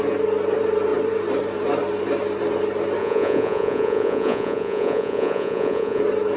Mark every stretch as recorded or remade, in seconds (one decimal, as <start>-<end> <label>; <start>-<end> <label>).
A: 0.0-3.0 recorded; 3.0-6.0 remade; 6.0-6.4 recorded